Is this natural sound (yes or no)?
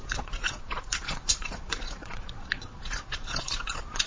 no